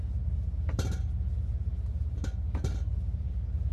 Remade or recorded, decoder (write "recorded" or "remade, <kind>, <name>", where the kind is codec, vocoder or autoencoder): recorded